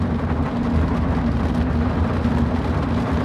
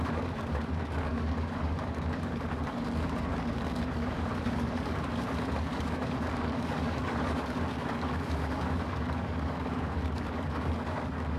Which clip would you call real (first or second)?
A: first